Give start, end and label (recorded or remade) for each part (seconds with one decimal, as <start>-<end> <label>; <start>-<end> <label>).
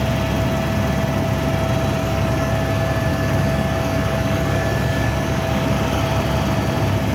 0.0-2.0 recorded; 2.0-2.5 remade; 2.5-3.1 recorded; 3.1-6.0 remade; 6.0-7.1 recorded